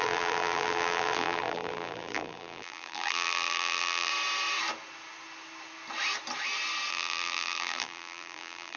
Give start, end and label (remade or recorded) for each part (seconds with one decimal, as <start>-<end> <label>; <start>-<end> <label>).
0.0-4.1 remade; 4.1-6.9 recorded; 6.9-8.8 remade